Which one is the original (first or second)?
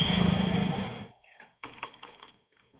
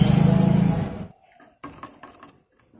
second